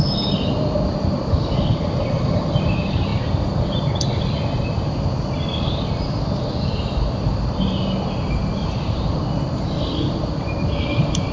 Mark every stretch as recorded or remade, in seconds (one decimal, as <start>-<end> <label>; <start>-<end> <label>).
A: 0.0-11.3 recorded